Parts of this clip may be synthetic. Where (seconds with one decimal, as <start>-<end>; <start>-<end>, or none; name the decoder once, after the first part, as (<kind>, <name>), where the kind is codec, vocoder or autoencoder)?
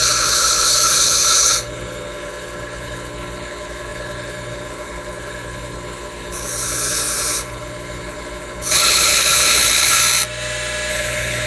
0.0-10.0 (codec, HILCodec); 10.9-11.5